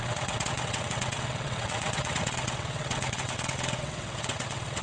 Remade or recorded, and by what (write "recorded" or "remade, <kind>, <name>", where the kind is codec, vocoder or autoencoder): remade, vocoder, WaveNeXt